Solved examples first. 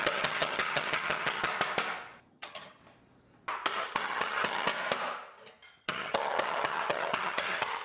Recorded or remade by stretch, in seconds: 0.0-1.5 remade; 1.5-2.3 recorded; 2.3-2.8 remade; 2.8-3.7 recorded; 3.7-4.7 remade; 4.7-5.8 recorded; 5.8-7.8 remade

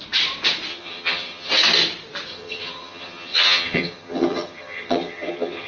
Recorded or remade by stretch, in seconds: 0.0-0.7 recorded; 0.7-1.5 remade; 1.5-2.3 recorded; 2.3-5.7 remade

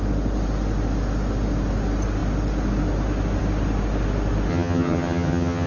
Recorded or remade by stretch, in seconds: 0.0-4.5 recorded; 4.5-5.7 remade